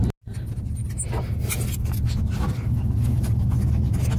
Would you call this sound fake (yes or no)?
no